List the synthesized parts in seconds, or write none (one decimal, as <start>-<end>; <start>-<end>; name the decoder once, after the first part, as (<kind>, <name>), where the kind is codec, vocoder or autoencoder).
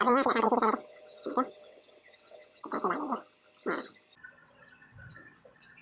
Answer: 0.0-2.7 (vocoder, WaveNeXt); 4.4-5.8